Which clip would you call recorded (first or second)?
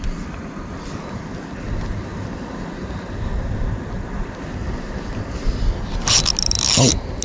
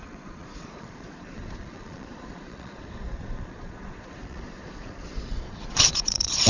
first